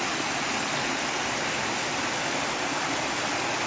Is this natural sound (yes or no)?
yes